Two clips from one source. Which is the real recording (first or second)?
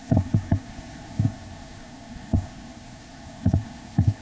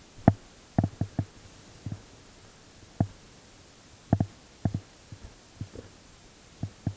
second